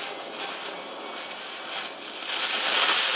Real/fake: real